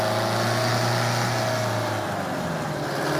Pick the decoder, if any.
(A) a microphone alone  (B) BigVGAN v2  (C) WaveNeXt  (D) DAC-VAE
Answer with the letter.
A